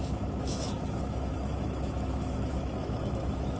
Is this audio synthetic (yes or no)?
yes